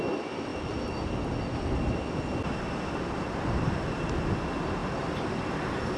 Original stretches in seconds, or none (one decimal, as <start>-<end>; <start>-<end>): 0.0-6.0